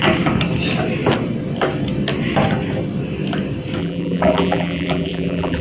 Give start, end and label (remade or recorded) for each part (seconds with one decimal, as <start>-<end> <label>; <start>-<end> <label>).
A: 0.0-3.8 recorded; 3.8-5.6 remade